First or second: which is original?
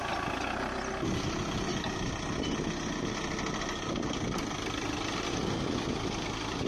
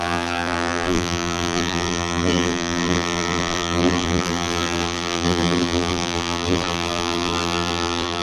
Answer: first